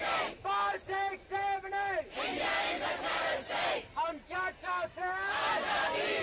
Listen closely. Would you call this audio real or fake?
real